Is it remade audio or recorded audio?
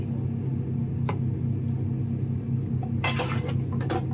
recorded